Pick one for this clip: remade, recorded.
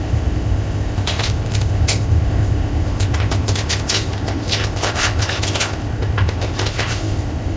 remade